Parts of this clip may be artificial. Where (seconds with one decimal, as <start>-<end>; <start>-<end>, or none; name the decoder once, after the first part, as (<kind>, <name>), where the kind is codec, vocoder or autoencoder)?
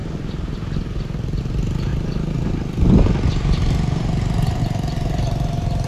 0.0-1.9 (vocoder, BigVGAN v2); 4.6-5.9